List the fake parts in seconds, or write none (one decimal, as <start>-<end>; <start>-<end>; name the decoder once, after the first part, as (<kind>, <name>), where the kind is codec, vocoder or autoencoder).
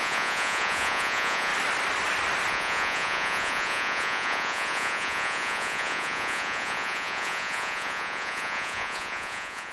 0.0-1.5 (vocoder, Vocos); 2.5-9.7